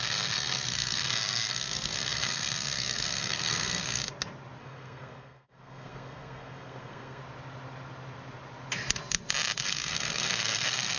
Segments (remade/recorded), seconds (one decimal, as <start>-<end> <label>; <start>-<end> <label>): 0.0-4.0 remade; 4.0-4.6 recorded; 4.6-7.2 remade; 7.2-9.6 recorded; 9.6-11.0 remade